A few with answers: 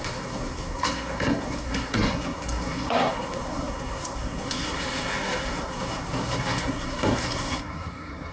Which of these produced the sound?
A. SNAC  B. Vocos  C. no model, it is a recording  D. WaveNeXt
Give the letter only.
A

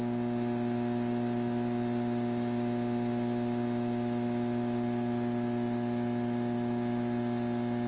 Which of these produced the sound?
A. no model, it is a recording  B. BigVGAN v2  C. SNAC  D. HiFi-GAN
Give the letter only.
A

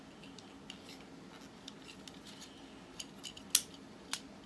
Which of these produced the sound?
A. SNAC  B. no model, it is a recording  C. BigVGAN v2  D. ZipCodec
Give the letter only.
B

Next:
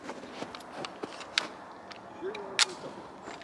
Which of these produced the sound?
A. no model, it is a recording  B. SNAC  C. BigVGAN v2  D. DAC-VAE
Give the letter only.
A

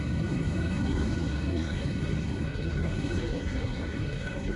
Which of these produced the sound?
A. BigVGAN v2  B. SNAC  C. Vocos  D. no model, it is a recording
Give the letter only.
B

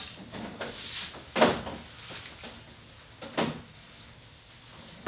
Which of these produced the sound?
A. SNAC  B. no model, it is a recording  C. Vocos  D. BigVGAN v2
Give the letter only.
B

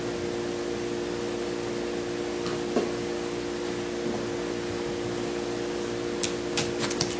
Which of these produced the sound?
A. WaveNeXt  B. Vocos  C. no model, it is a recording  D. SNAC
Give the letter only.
C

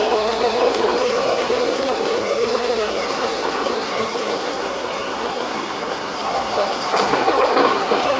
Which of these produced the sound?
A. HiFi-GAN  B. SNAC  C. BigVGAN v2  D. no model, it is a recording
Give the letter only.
B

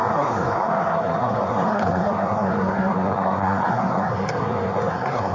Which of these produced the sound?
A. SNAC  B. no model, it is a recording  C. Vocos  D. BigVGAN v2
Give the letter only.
A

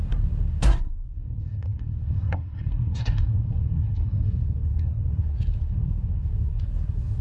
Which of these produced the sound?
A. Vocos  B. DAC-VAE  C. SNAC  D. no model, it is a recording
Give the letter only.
C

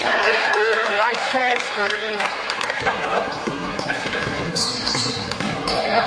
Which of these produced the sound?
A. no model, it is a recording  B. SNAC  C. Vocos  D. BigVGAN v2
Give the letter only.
B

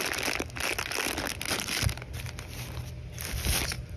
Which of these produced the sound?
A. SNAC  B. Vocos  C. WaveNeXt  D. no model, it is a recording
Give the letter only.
D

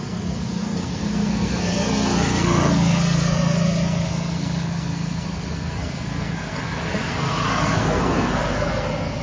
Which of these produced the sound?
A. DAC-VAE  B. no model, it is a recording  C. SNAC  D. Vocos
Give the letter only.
C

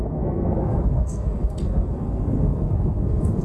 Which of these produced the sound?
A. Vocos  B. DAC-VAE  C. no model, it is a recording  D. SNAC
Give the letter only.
D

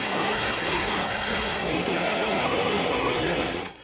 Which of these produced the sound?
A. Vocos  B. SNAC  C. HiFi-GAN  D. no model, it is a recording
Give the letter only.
B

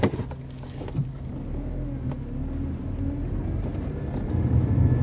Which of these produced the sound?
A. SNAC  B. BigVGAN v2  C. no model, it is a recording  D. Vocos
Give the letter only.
C